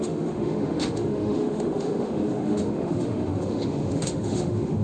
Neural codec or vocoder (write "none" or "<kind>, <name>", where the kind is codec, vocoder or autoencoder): autoencoder, DAC-VAE